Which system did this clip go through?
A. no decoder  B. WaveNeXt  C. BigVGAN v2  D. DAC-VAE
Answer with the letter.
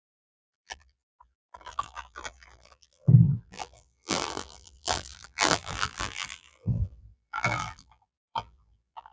C